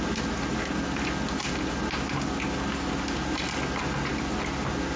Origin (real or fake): real